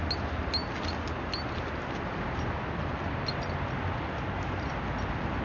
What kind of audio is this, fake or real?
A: real